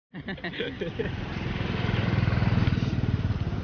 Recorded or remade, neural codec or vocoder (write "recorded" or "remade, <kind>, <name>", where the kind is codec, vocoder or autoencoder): remade, vocoder, BigVGAN v2